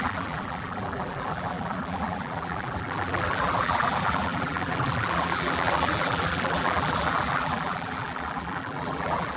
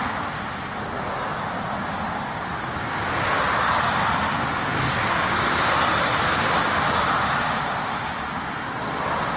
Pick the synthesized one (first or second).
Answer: first